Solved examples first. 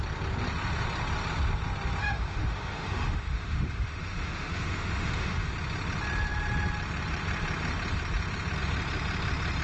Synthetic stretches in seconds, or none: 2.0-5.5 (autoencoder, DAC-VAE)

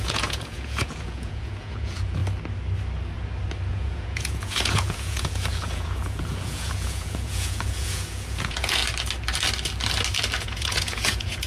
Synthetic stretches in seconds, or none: 0.0-2.2 (vocoder, Vocos); 3.7-8.8; 10.4-11.5